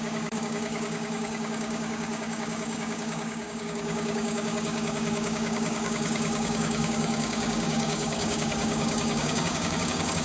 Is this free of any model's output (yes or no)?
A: no